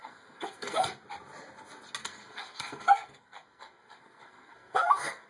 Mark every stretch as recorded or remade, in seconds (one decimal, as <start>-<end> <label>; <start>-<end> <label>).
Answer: 0.0-0.9 remade; 0.9-2.0 recorded; 2.0-5.3 remade